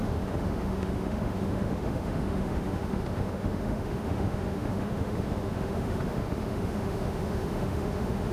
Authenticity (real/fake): fake